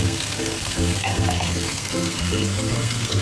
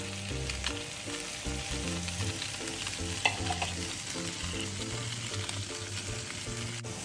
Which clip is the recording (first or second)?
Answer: second